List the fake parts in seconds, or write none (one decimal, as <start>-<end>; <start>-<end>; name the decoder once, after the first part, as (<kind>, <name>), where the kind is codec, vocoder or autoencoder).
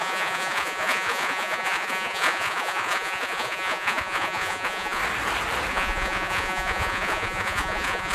0.0-5.0 (vocoder, Vocos); 5.7-8.1